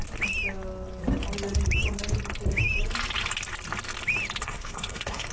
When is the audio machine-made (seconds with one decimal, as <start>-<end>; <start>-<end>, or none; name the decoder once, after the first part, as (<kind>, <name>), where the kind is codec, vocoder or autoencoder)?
4.4-5.3 (codec, SNAC)